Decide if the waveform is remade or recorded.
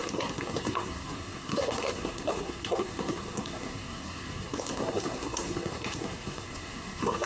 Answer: remade